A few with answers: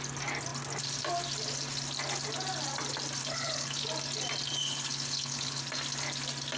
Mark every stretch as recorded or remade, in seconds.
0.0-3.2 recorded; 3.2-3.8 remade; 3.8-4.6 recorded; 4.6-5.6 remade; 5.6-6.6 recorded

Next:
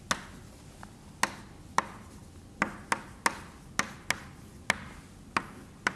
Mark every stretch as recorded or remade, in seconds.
0.0-6.0 recorded

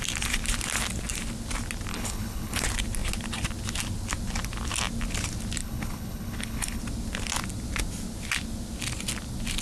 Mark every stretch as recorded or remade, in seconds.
0.0-1.9 recorded; 1.9-2.6 remade; 2.6-5.6 recorded; 5.6-6.8 remade; 6.8-9.6 recorded

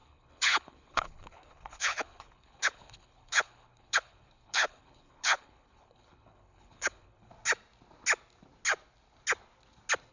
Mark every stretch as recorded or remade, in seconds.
0.0-7.3 remade; 7.3-10.1 recorded

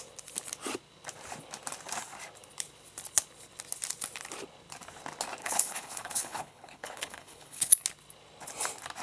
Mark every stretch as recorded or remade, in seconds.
0.0-5.4 recorded; 5.4-7.7 remade; 7.7-9.0 recorded

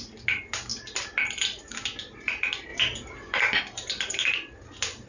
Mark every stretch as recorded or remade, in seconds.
0.0-5.1 recorded